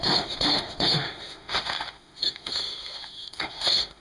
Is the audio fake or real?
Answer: fake